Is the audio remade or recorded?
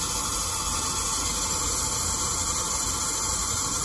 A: recorded